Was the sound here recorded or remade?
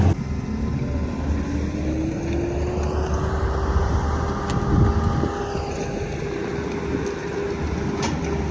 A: recorded